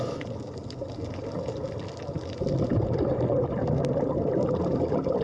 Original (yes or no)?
yes